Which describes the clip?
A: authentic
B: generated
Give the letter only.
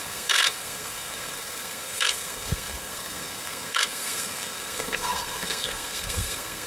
B